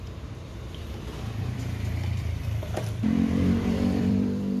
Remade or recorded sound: remade